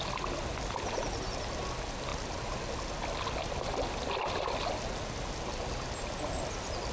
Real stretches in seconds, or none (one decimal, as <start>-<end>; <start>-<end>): 0.0-6.9